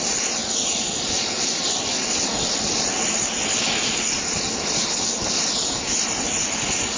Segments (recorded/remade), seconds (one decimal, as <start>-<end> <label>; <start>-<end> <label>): 0.0-7.0 recorded